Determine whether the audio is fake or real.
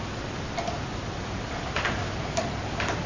fake